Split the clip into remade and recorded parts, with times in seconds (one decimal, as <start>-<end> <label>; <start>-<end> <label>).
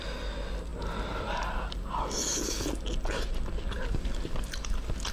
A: 0.0-5.1 recorded